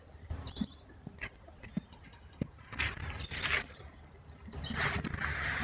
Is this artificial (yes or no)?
no